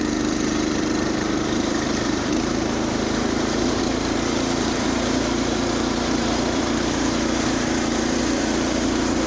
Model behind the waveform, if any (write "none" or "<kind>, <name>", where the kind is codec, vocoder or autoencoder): vocoder, BigVGAN v2